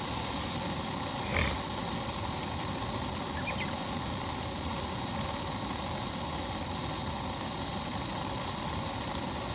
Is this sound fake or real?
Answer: real